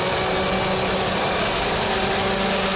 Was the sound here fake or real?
real